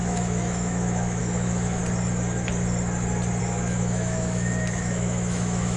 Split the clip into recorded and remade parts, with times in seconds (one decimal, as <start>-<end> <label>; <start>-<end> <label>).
0.0-1.8 remade; 1.8-3.4 recorded; 3.4-5.8 remade